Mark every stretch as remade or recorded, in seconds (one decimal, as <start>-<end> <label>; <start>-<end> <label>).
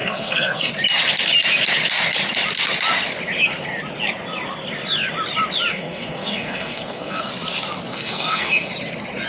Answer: 0.0-0.7 remade; 0.7-5.7 recorded; 5.7-7.3 remade; 7.3-7.9 recorded; 7.9-8.7 remade; 8.7-9.3 recorded